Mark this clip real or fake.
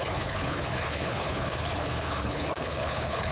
fake